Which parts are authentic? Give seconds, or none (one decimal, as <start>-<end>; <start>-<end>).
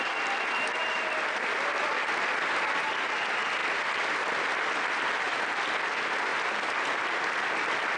0.0-8.0